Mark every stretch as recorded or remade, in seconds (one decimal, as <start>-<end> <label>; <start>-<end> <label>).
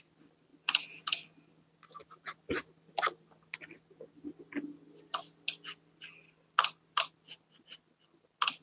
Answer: 0.0-8.6 recorded